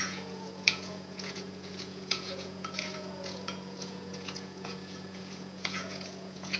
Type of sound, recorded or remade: remade